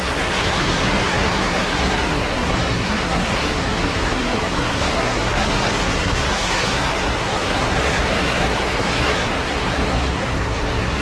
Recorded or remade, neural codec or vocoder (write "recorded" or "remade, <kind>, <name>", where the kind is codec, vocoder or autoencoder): remade, codec, SNAC